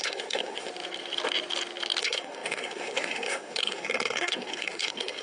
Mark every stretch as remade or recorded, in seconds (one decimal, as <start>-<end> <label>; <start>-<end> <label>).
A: 0.0-0.7 remade; 0.7-2.0 recorded; 2.0-5.2 remade